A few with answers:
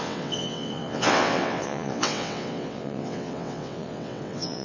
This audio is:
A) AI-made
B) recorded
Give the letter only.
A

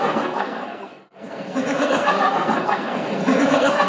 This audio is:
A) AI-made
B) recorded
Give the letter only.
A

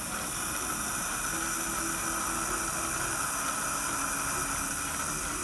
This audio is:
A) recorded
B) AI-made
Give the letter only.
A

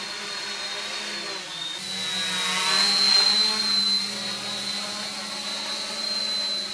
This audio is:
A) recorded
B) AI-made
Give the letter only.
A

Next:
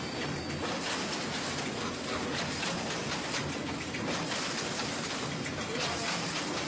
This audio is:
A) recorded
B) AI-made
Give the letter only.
A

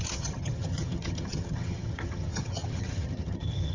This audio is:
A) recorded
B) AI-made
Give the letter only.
B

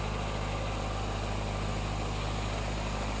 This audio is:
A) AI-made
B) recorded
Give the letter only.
B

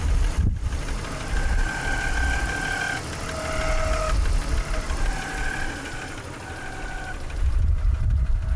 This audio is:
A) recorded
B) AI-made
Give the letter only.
A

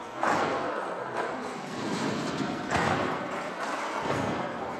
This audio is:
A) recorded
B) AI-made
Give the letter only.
B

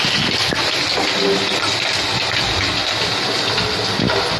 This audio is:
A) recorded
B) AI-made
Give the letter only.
A